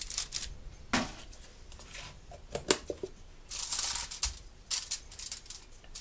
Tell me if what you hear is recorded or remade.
recorded